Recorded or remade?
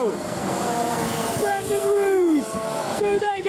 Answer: remade